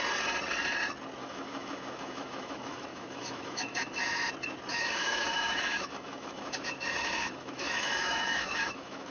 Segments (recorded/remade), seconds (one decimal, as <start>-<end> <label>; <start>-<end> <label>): 0.0-1.2 recorded; 1.2-4.3 remade; 4.3-4.7 recorded; 4.7-9.1 remade